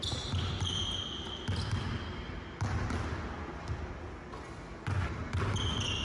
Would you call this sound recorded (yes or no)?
yes